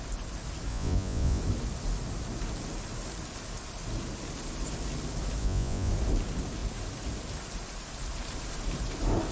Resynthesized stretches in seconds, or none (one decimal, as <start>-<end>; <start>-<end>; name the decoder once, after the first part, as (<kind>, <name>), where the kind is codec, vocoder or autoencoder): 0.7-1.4 (vocoder, Vocos); 5.4-5.9